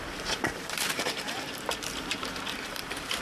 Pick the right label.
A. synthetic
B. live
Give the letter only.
A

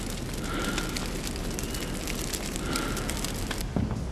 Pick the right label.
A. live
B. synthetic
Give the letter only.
A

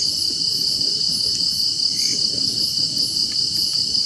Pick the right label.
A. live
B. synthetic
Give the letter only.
A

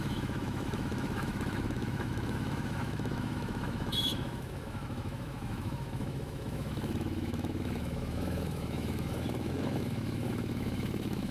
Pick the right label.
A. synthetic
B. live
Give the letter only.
A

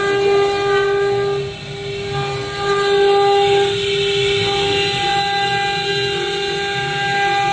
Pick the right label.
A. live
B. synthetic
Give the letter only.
A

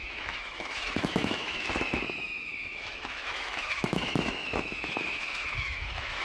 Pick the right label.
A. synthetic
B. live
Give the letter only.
A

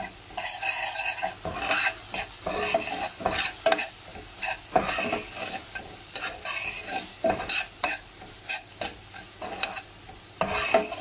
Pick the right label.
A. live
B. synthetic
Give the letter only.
A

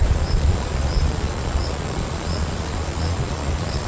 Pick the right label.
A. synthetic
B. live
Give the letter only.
A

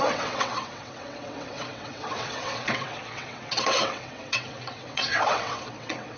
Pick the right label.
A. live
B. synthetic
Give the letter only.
B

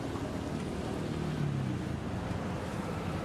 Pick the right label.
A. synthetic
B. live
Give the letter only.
B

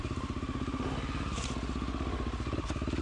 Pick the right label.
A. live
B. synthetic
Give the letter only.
A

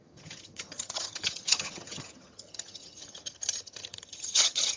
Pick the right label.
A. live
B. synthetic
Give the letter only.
B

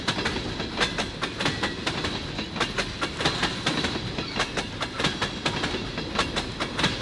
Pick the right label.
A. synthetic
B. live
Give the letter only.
B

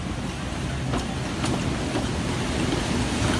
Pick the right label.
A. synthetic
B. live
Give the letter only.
B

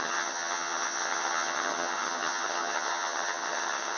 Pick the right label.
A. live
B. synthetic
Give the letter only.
B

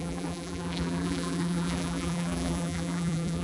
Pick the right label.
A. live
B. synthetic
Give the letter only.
B